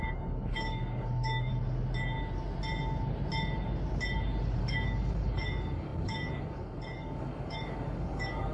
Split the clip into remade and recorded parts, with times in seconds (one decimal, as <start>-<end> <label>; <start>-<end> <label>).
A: 0.0-1.5 remade; 1.5-4.6 recorded; 4.6-8.5 remade